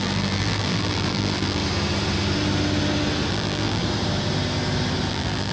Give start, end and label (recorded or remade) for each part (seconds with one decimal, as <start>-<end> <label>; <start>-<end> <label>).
0.0-1.6 remade; 1.6-3.3 recorded; 3.3-3.8 remade; 3.8-5.1 recorded; 5.1-5.5 remade